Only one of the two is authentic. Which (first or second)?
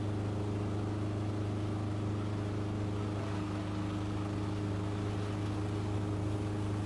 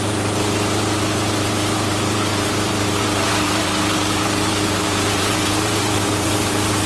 first